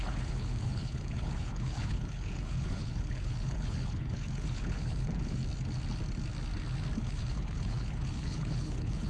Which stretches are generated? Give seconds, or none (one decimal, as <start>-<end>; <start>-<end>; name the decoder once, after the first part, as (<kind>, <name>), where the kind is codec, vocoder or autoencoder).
0.0-5.4 (codec, HILCodec); 7.0-9.1